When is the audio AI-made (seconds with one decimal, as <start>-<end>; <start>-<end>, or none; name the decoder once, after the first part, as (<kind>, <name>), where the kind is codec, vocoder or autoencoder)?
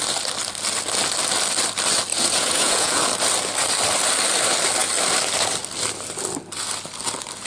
2.1-2.9 (vocoder, Vocos)